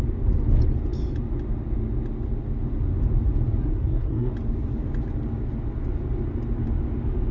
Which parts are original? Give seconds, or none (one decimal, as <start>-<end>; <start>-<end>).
0.0-3.6; 4.3-7.3